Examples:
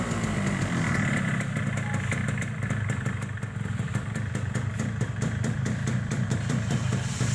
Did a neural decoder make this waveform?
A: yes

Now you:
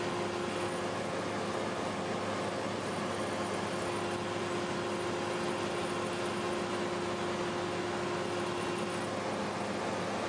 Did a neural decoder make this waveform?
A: no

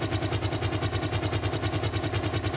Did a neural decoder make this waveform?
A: no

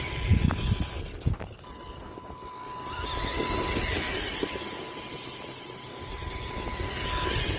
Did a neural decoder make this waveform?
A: no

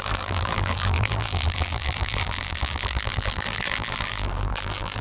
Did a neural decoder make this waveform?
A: yes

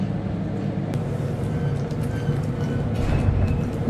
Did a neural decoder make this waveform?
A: no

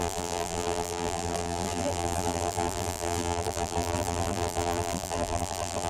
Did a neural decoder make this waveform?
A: yes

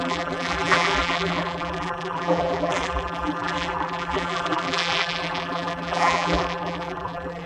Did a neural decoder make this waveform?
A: yes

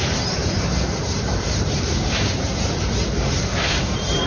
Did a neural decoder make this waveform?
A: yes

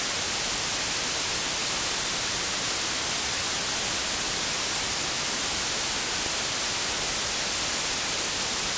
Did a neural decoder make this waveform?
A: no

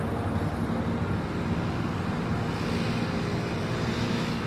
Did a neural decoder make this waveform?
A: no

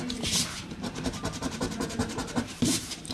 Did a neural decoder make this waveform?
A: yes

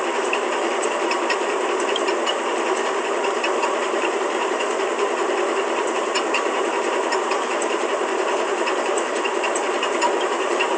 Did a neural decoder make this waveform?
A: yes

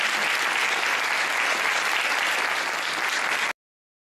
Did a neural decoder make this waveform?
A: no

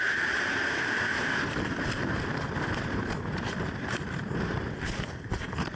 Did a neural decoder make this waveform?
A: yes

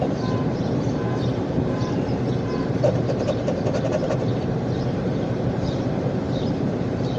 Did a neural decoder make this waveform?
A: yes